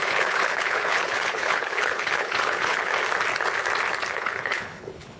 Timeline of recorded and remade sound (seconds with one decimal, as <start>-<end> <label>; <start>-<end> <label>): 0.0-2.9 remade; 2.9-4.1 recorded; 4.1-5.2 remade